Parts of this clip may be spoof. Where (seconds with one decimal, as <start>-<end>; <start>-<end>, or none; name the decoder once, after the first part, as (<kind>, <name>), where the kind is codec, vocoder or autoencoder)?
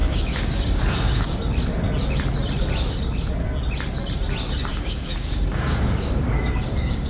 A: 0.0-1.4 (codec, DAC); 4.7-7.1